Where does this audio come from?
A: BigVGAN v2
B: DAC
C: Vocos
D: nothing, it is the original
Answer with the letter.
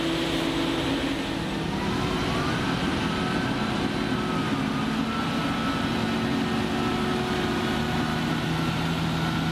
D